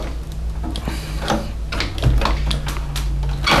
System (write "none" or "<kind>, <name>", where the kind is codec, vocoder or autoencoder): none